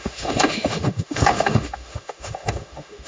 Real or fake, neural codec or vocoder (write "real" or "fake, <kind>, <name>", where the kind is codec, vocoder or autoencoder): fake, autoencoder, DAC-VAE